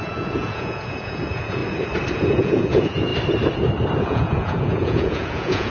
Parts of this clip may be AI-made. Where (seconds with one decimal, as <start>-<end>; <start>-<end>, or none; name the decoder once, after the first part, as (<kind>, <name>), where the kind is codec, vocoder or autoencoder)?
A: 0.0-1.6 (vocoder, Vocos); 2.1-3.1; 4.0-5.7